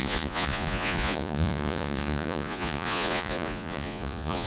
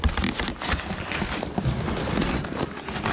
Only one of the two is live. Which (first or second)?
second